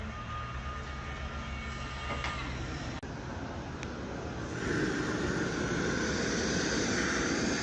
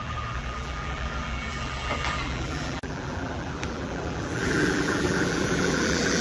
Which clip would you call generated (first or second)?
second